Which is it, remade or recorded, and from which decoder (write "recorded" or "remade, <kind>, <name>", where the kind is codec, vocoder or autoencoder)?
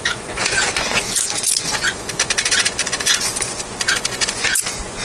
remade, vocoder, Vocos